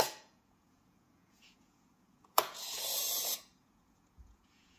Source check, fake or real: fake